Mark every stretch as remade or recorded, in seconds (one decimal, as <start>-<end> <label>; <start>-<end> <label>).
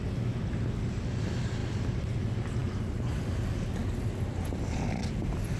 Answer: 0.0-5.6 recorded